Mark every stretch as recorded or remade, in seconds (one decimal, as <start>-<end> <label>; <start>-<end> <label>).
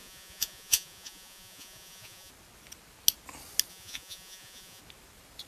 0.0-2.3 remade; 2.3-3.7 recorded; 3.7-4.8 remade; 4.8-5.5 recorded